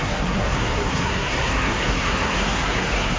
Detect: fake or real fake